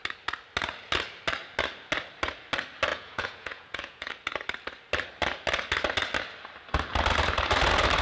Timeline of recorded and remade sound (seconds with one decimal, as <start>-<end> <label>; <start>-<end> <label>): 0.0-2.9 recorded; 2.9-4.1 remade; 4.1-8.0 recorded